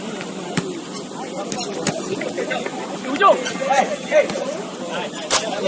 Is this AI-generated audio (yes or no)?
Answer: yes